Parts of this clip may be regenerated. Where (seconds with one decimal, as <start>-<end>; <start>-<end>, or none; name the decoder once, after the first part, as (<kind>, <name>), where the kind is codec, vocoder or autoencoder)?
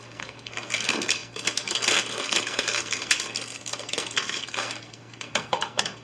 0.0-6.0 (codec, SNAC)